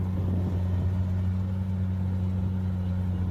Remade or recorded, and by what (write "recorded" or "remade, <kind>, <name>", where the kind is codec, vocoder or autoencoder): recorded